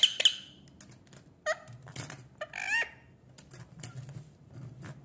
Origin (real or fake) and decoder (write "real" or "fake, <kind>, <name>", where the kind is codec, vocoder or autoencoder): real